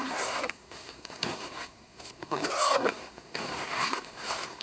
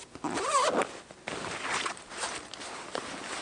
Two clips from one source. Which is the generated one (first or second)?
first